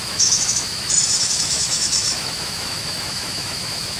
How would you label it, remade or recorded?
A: remade